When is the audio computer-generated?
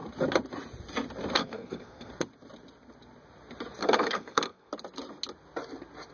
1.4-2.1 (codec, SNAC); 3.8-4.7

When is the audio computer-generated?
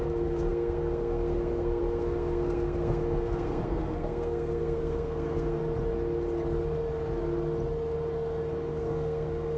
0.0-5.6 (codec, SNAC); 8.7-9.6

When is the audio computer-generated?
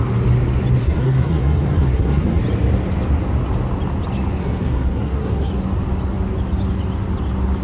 0.8-2.4 (codec, SNAC); 4.4-5.5